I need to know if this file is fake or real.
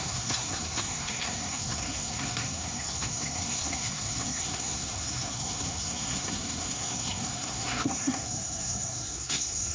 fake